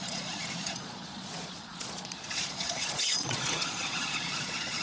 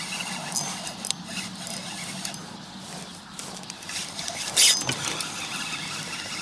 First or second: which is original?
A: second